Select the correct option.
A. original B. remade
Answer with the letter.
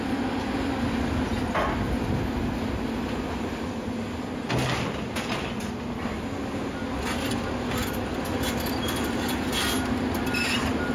A